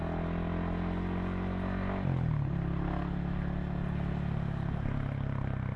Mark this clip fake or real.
real